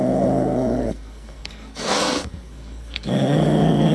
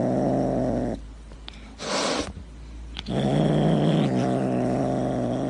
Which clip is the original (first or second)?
second